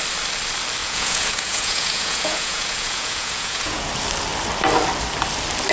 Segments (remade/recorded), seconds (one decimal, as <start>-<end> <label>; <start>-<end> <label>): 0.0-0.8 recorded; 0.8-3.9 remade; 3.9-5.7 recorded